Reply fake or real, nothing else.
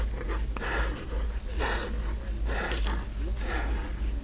real